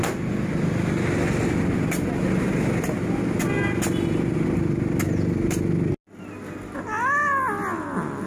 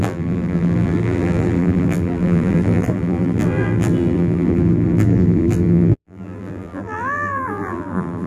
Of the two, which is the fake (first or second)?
second